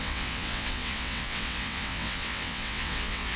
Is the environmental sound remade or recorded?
remade